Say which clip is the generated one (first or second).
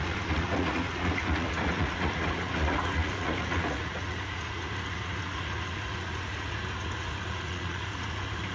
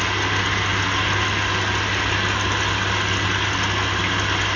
first